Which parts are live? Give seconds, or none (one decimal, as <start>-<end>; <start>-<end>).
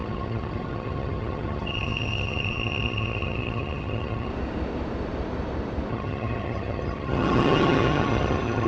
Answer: 4.3-5.9